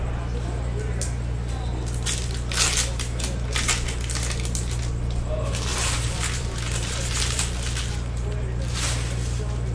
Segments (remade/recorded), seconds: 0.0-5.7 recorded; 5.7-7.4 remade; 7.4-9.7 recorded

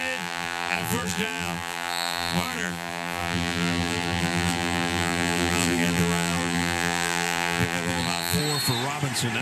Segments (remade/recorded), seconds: 0.0-8.4 remade; 8.4-9.4 recorded

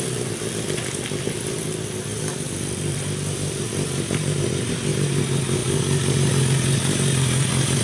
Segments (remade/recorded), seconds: 0.0-2.1 recorded; 2.1-4.7 remade; 4.7-5.6 recorded; 5.6-6.4 remade; 6.4-7.8 recorded

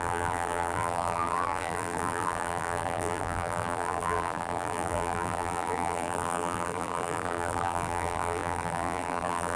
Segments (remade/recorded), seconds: 0.0-9.6 remade